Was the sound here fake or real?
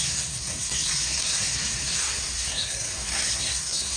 fake